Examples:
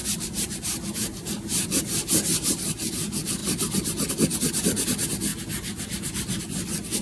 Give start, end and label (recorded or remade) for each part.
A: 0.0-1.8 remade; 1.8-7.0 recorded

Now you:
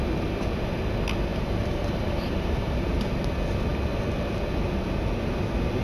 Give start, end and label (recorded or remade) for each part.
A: 0.0-1.3 recorded; 1.3-3.1 remade; 3.1-5.8 recorded

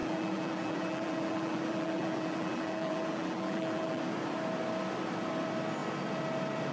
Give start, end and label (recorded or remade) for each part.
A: 0.0-4.0 remade; 4.0-6.7 recorded